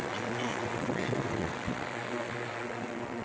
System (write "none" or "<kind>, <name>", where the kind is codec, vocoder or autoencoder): vocoder, WaveNeXt